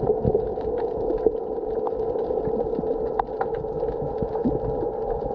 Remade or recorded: recorded